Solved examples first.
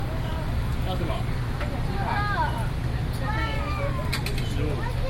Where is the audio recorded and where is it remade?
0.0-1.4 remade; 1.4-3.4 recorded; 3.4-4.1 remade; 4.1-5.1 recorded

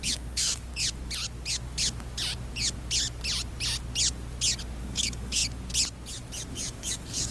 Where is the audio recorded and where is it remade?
0.0-0.7 remade; 0.7-4.8 recorded; 4.8-5.4 remade; 5.4-6.5 recorded; 6.5-7.3 remade

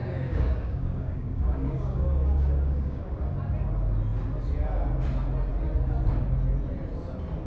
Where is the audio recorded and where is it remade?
0.0-3.0 remade; 3.0-7.5 recorded

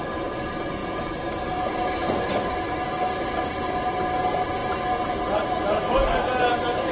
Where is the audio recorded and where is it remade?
0.0-6.9 recorded

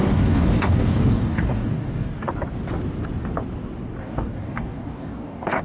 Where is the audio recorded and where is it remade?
0.0-2.3 remade; 2.3-4.0 recorded; 4.0-5.6 remade